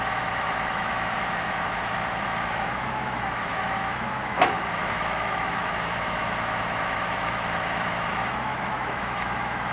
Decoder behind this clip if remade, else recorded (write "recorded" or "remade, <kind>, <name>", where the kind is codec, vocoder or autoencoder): remade, autoencoder, DAC-VAE